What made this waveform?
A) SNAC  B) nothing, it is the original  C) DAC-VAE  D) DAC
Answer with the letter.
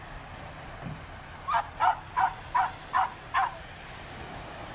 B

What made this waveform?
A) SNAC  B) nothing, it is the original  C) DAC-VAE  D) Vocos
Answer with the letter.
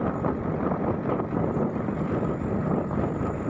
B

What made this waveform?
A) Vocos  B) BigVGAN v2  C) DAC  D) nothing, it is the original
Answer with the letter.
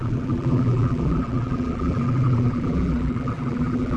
B